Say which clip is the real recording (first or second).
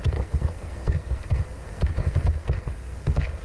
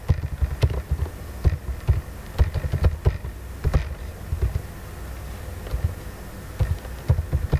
second